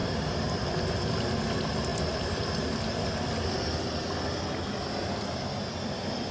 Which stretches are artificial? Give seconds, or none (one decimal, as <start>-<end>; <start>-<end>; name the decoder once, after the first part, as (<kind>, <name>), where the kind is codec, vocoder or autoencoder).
0.0-0.8 (vocoder, BigVGAN v2); 1.9-2.7